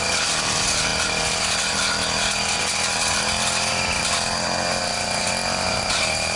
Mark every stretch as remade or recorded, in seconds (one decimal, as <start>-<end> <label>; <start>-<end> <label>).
0.0-6.4 recorded